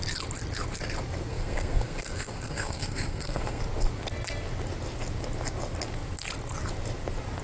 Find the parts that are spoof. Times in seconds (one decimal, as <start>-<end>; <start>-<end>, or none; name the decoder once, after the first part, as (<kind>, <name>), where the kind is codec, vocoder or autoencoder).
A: 1.3-3.6 (codec, SNAC)